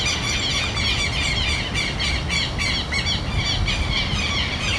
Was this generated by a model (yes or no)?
no